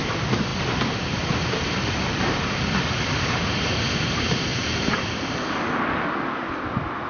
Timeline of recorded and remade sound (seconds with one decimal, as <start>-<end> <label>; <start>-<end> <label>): 0.0-4.5 recorded; 4.5-5.1 remade; 5.1-7.1 recorded